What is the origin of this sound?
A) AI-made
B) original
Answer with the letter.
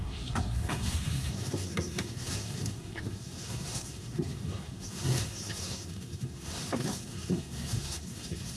A